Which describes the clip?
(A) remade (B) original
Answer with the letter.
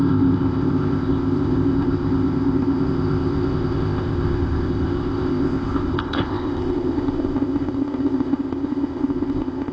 A